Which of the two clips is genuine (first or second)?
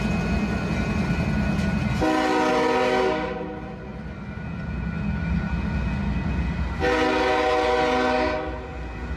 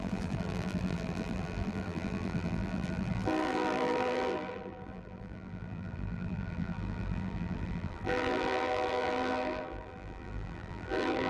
first